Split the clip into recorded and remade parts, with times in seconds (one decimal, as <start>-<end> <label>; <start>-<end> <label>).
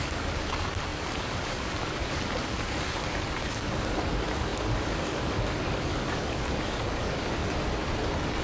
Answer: 0.0-7.4 remade; 7.4-8.4 recorded